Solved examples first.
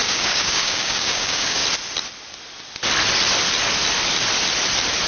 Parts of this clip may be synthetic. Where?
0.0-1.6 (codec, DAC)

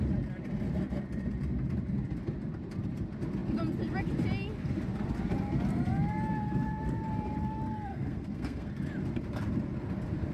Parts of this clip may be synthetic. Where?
7.9-8.7 (codec, SNAC)